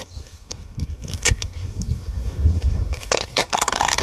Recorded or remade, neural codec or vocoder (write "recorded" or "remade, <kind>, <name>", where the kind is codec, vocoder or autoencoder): remade, codec, SNAC